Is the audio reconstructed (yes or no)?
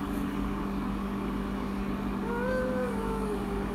yes